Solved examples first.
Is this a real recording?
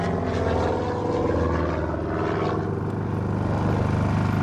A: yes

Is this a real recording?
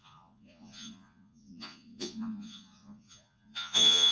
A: no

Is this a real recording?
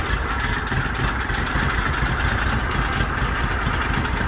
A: yes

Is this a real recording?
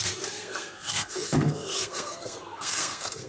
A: no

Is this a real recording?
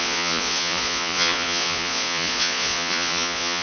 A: no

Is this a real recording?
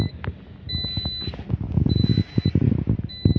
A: yes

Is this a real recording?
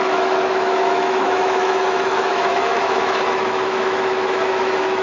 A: no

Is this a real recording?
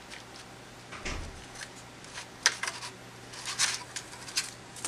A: yes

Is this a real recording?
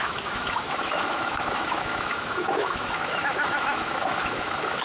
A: no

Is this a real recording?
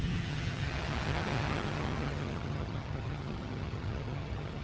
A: no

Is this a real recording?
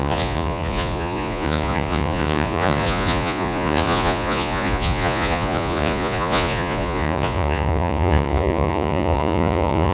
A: no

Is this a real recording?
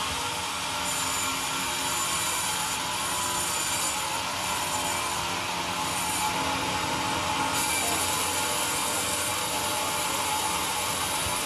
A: yes